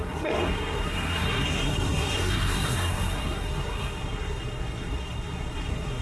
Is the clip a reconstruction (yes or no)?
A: yes